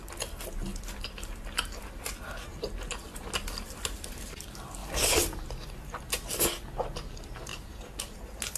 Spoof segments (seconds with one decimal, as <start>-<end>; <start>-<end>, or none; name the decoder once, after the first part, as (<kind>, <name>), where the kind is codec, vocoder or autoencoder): 0.7-1.8 (vocoder, BigVGAN v2); 4.8-6.0; 7.5-8.2